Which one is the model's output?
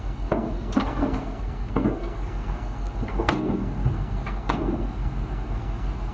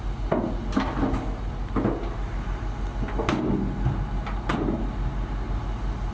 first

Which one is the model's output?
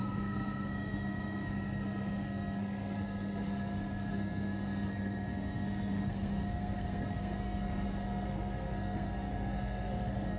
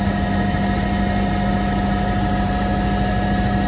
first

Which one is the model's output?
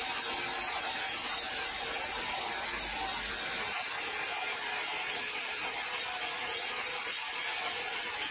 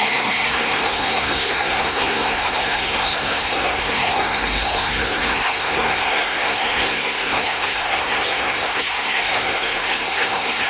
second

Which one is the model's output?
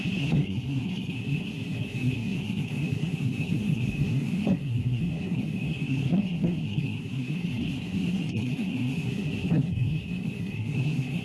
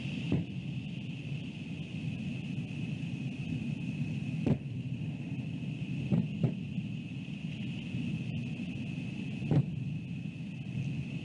first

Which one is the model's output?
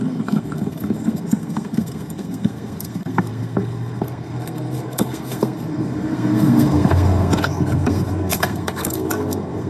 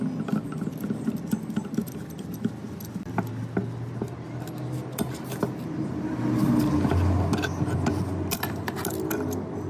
first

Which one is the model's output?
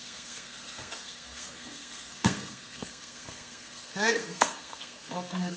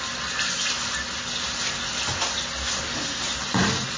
first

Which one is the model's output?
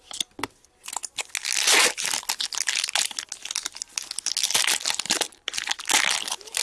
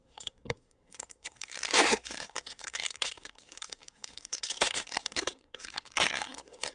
second